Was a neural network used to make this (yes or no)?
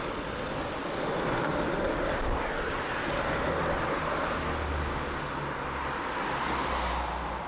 no